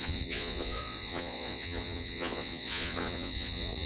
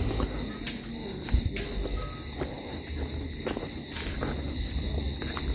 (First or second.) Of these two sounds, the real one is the second